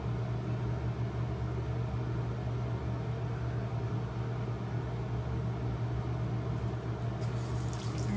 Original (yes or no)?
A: yes